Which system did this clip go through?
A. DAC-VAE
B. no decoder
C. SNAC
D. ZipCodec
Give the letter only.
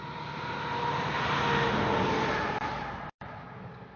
B